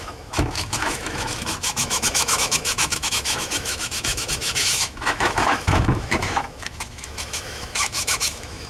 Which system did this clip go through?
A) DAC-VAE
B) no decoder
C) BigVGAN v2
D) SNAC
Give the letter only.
A